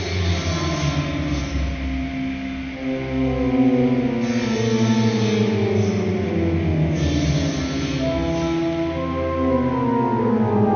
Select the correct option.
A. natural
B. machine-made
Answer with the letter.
A